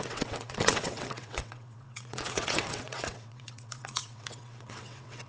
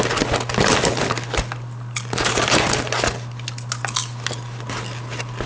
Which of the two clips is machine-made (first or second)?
first